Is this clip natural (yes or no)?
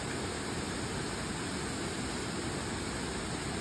yes